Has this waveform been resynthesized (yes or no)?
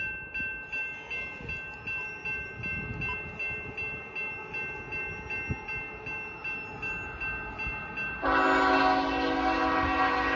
no